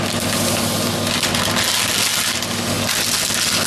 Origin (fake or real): real